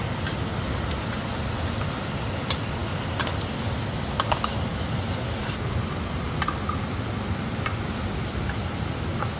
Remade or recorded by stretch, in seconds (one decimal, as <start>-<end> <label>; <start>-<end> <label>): 0.0-9.4 recorded